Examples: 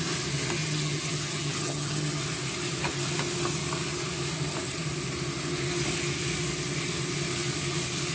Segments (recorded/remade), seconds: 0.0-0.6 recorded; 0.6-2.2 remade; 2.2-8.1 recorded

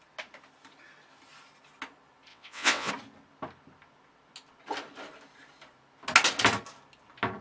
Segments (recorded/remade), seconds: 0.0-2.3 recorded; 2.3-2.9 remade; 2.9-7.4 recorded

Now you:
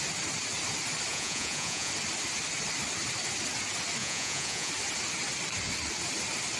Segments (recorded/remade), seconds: 0.0-1.1 recorded; 1.1-1.9 remade; 1.9-4.0 recorded; 4.0-4.7 remade; 4.7-6.6 recorded